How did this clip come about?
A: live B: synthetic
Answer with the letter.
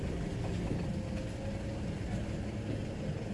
A